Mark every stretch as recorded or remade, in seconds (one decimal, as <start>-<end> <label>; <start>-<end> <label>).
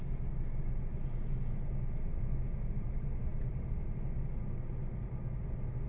0.0-5.9 recorded